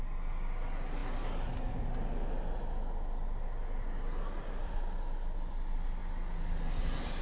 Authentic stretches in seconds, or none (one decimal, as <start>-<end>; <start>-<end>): 0.0-7.2